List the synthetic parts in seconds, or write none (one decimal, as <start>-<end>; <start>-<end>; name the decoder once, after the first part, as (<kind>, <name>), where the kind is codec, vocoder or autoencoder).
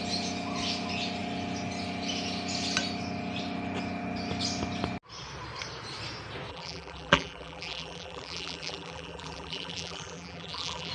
6.5-10.9 (vocoder, BigVGAN v2)